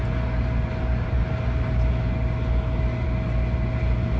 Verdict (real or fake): real